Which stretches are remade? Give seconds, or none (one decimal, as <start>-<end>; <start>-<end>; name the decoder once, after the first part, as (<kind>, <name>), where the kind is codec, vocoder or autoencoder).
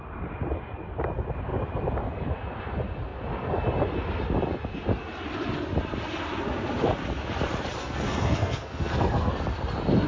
7.8-9.3 (codec, SNAC)